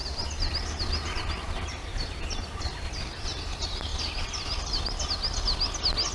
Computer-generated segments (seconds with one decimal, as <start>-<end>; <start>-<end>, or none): none